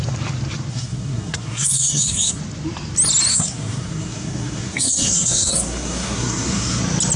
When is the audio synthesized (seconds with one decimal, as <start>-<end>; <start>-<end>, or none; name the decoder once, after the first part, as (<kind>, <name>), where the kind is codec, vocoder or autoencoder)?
0.7-2.4 (codec, SNAC); 3.3-6.8